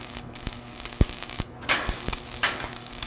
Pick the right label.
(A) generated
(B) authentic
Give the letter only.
A